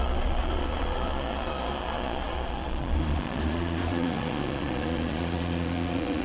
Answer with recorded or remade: remade